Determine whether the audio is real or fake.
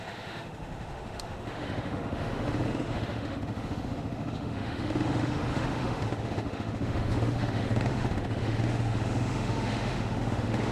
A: fake